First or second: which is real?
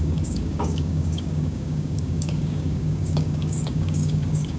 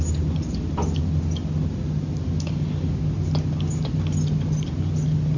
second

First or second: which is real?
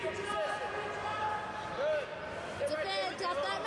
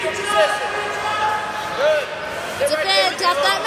second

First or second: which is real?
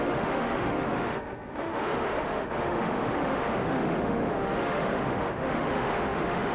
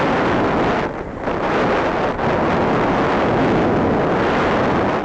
second